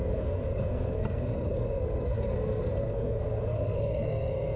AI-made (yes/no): yes